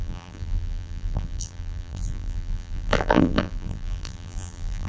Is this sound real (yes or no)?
no